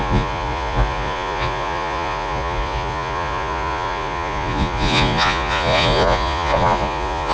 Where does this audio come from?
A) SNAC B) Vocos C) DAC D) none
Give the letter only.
B